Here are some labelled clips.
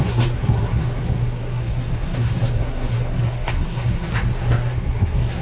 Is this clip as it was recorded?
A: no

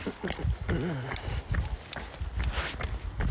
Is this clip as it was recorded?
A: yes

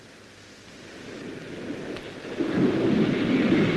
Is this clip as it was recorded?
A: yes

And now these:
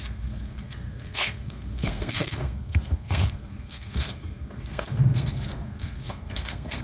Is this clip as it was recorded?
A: no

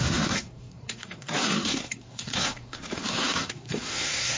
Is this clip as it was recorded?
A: no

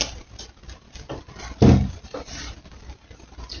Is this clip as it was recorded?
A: yes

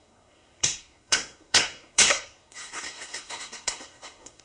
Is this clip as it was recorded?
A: no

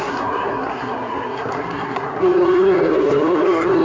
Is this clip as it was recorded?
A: no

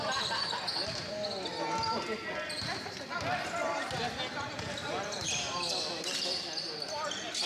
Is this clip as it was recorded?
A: yes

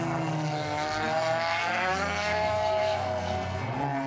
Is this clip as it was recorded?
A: no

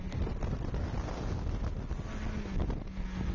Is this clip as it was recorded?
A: yes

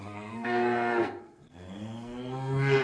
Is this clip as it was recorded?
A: no